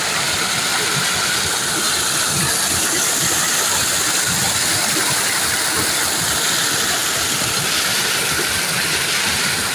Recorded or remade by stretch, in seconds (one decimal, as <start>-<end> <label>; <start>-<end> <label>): 0.0-0.7 remade; 0.7-3.1 recorded; 3.1-9.7 remade